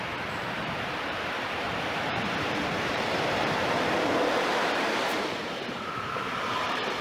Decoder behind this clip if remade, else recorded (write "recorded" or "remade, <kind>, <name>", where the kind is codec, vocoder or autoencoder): remade, vocoder, BigVGAN v2